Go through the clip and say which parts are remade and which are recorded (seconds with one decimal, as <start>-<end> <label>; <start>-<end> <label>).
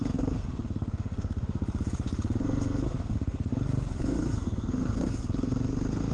0.0-1.6 remade; 1.6-2.4 recorded; 2.4-3.5 remade; 3.5-4.0 recorded; 4.0-6.1 remade